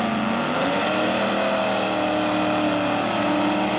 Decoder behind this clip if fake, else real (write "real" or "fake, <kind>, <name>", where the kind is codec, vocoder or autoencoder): real